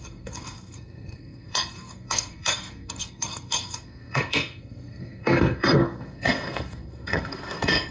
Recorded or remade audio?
remade